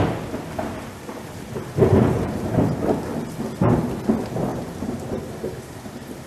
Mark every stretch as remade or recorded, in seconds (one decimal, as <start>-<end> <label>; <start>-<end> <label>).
0.0-1.9 recorded; 1.9-2.7 remade; 2.7-4.5 recorded; 4.5-6.3 remade